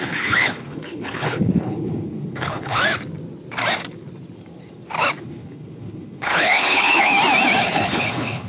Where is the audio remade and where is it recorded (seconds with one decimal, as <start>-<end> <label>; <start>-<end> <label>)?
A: 0.0-2.8 remade; 2.8-5.2 recorded; 5.2-7.1 remade; 7.1-7.6 recorded; 7.6-8.5 remade